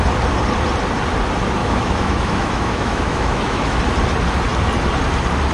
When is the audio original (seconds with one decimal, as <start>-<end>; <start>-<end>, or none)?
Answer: 0.0-1.6; 3.8-5.5